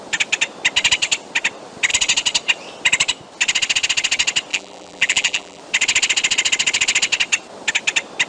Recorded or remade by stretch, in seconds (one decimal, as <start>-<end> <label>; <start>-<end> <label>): 0.0-4.5 recorded; 4.5-5.6 remade; 5.6-8.3 recorded